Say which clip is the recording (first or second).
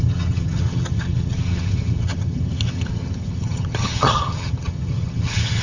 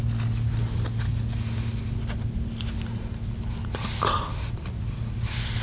second